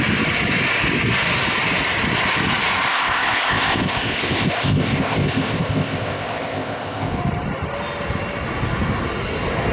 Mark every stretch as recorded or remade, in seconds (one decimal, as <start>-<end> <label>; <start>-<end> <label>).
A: 0.0-2.9 recorded; 2.9-7.1 remade; 7.1-9.7 recorded